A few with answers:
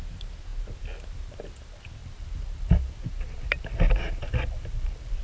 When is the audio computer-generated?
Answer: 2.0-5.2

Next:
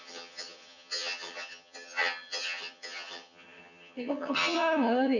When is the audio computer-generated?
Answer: 0.0-5.2

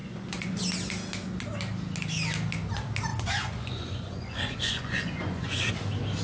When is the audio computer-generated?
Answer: 0.0-0.6; 3.1-5.7

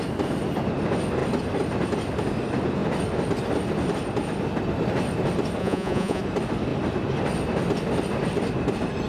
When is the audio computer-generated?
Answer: 5.6-6.2

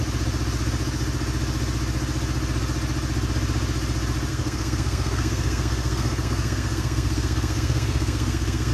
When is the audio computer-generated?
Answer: 4.3-8.7